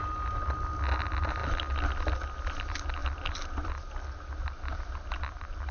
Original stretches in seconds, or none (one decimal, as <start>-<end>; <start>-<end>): 0.0-5.7